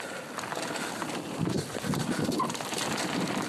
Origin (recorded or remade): recorded